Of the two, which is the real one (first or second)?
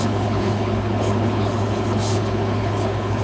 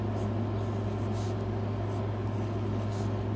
second